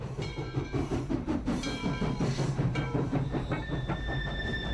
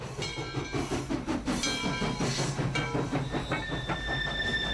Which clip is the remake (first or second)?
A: first